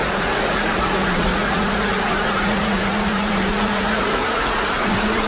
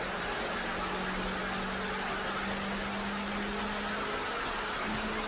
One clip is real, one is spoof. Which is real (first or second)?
second